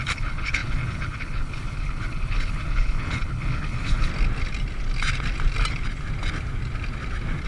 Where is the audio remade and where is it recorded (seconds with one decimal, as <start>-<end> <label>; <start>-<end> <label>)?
0.0-4.1 remade; 4.1-7.5 recorded